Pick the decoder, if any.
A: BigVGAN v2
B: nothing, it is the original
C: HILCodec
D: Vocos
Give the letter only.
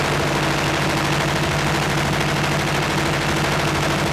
B